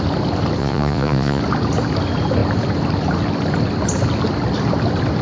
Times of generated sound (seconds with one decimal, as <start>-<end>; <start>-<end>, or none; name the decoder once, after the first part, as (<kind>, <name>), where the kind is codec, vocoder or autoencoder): 0.6-1.4 (vocoder, Vocos)